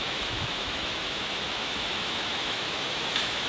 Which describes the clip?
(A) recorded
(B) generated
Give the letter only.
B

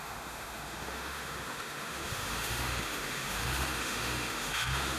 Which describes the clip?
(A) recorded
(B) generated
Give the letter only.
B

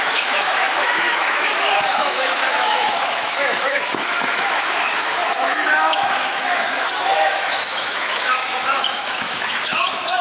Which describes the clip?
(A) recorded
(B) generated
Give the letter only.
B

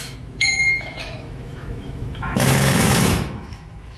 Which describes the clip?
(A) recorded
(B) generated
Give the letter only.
B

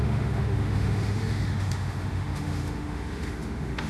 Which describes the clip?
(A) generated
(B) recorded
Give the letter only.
A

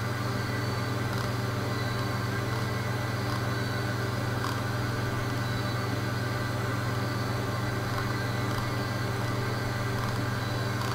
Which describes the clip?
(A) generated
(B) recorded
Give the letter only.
B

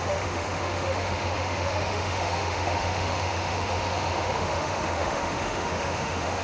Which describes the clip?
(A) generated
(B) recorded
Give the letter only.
A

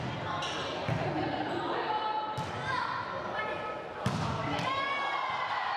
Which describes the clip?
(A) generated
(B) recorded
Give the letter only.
B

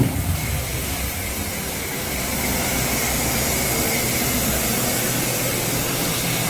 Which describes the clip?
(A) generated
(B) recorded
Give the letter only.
B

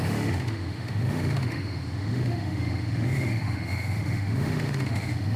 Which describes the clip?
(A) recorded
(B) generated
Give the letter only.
B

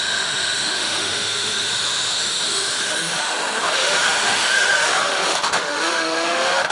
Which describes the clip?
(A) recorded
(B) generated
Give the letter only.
B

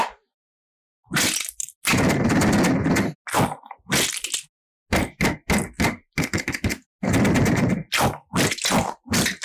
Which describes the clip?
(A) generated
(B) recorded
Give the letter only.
B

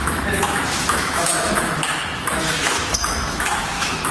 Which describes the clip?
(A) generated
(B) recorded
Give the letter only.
A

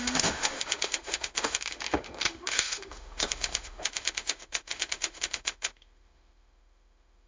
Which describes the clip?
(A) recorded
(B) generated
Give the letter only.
B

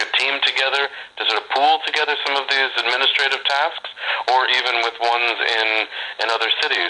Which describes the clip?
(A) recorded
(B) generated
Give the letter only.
A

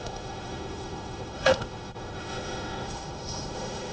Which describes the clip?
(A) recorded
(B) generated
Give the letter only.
B